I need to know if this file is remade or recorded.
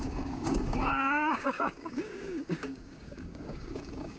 remade